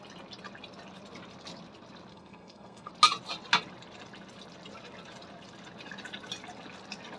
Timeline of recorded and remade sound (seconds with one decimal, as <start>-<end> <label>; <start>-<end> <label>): 0.0-2.1 recorded; 2.1-2.9 remade; 2.9-7.2 recorded